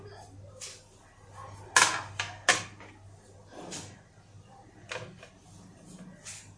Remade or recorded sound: recorded